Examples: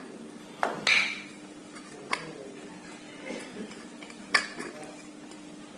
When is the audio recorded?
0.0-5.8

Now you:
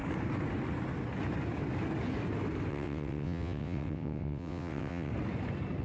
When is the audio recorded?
0.0-2.7; 5.1-5.8

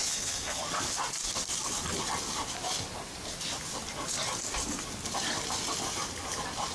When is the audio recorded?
0.6-6.7

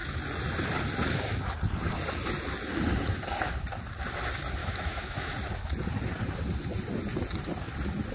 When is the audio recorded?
0.0-4.6; 5.3-8.1

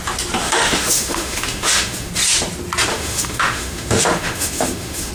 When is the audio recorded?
0.0-0.4; 2.1-2.9

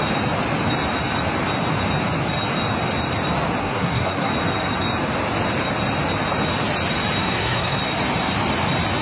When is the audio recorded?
0.0-3.6; 4.3-7.2; 7.8-9.0

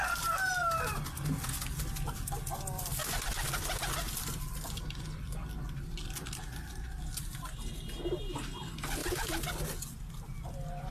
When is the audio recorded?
0.0-10.9